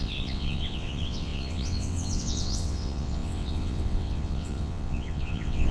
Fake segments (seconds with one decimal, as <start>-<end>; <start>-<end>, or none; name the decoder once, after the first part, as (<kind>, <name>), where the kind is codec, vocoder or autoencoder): 0.0-5.7 (vocoder, WaveNeXt)